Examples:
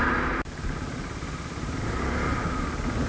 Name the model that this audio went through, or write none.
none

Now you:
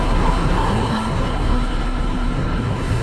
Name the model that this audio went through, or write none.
codec, SNAC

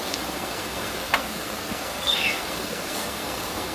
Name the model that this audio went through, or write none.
codec, SNAC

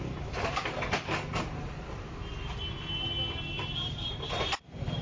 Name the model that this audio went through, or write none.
none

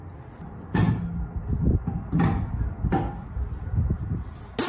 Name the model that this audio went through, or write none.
none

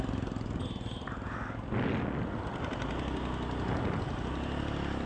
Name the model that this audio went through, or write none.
none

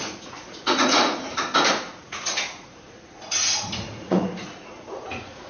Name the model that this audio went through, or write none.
vocoder, Vocos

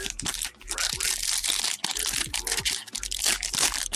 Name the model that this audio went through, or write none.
none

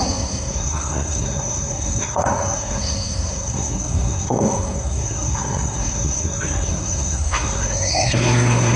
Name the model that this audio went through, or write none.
codec, SNAC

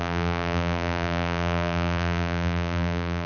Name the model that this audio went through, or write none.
vocoder, BigVGAN v2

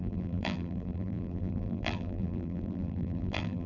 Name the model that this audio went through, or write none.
vocoder, BigVGAN v2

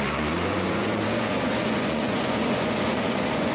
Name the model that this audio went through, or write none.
vocoder, Vocos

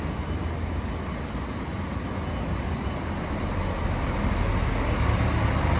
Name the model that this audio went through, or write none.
none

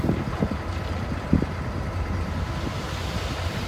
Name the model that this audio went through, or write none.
none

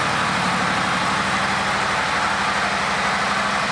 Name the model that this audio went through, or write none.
none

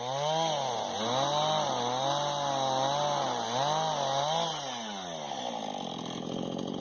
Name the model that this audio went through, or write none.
none